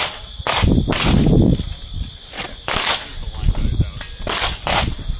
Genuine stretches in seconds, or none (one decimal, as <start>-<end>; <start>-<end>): 0.0-5.2